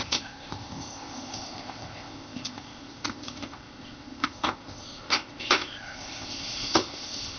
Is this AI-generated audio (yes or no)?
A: yes